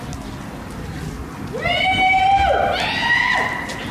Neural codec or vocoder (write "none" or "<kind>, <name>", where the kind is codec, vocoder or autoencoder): none